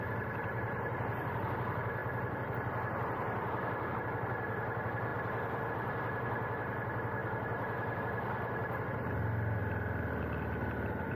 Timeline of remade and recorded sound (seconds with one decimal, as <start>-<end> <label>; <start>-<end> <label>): 0.0-11.1 recorded